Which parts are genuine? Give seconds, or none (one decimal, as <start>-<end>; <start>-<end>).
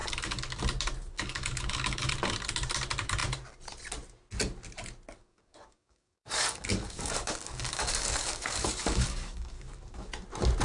0.6-1.1; 2.1-5.2; 10.1-10.6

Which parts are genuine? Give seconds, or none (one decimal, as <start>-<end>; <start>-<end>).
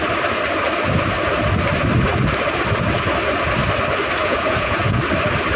0.0-4.2; 5.0-5.6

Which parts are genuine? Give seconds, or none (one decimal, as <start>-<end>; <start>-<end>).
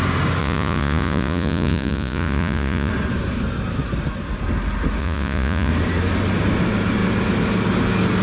0.0-0.4; 2.9-5.0; 5.7-8.2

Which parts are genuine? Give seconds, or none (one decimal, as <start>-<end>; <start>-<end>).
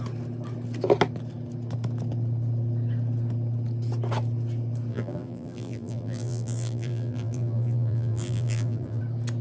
0.0-4.9; 9.0-9.4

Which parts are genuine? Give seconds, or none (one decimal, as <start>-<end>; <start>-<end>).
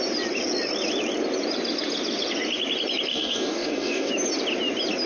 0.0-3.1; 4.1-5.1